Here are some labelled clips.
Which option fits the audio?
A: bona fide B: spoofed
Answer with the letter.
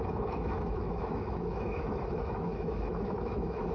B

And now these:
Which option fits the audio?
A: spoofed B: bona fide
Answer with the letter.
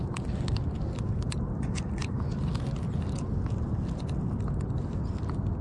B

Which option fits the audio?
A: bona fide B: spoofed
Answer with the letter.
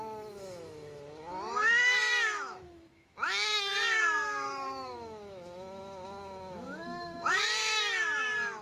B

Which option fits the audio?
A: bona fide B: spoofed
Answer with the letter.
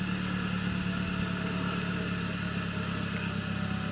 A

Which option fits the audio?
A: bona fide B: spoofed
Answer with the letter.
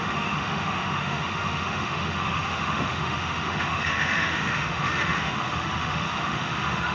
B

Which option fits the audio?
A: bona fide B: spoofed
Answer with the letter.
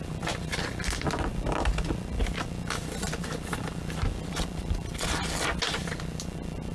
A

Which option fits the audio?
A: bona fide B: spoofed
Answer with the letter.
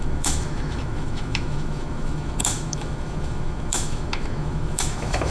B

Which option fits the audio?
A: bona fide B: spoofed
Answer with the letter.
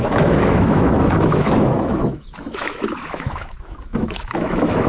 B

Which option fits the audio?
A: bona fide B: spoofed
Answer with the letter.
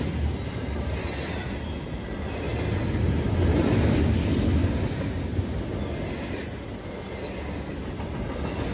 A